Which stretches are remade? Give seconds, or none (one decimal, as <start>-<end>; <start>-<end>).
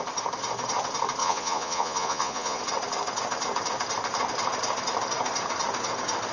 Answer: 1.2-2.6